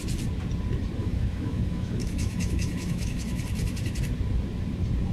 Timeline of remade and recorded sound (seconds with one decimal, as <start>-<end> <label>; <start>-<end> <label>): 0.0-1.0 recorded; 1.0-3.4 remade; 3.4-5.1 recorded